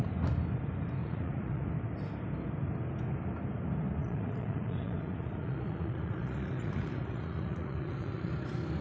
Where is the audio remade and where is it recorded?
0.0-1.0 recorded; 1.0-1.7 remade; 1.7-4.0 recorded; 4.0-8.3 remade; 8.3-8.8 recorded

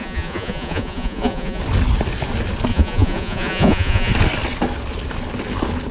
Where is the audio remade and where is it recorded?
0.0-1.6 remade; 1.6-2.7 recorded; 2.7-4.1 remade; 4.1-5.9 recorded

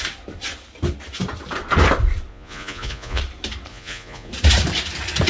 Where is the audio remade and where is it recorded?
0.0-2.3 recorded; 2.3-3.2 remade; 3.2-3.7 recorded; 3.7-4.3 remade; 4.3-5.3 recorded

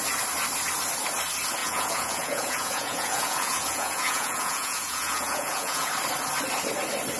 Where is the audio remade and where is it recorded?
0.0-1.6 recorded; 1.6-5.9 remade; 5.9-7.2 recorded